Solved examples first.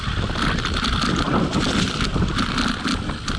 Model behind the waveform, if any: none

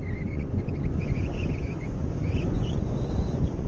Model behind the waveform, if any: vocoder, Vocos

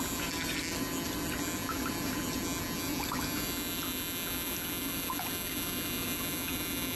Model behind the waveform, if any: none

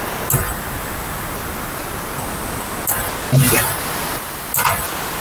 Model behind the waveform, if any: none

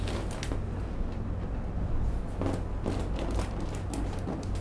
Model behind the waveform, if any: none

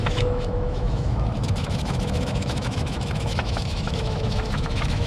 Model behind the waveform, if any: autoencoder, DAC-VAE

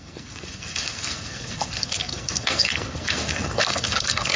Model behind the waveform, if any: codec, SNAC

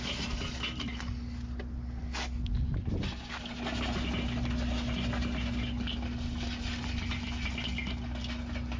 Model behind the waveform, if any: none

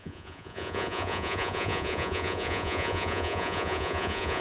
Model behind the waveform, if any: vocoder, Vocos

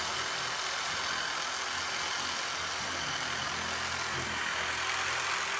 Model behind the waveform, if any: none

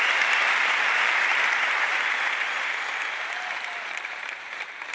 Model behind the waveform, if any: vocoder, BigVGAN v2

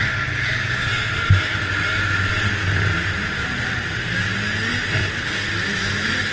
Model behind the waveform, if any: none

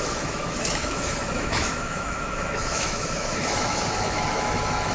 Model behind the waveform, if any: autoencoder, DAC-VAE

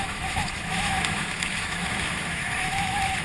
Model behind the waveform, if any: autoencoder, DAC-VAE